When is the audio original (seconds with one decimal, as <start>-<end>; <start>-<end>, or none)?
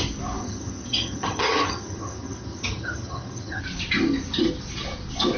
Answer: 0.0-0.4; 3.6-5.4